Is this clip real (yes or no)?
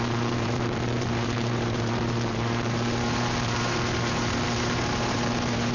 no